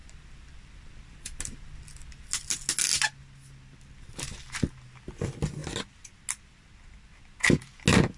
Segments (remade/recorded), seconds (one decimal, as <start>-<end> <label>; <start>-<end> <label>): 0.0-8.2 recorded